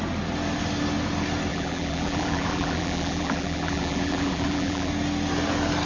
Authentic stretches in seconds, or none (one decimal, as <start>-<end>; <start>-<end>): 0.0-1.5; 4.9-5.8